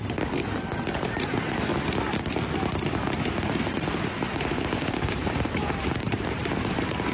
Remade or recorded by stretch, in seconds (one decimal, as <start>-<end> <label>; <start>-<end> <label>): 0.0-1.7 remade; 1.7-4.5 recorded; 4.5-7.1 remade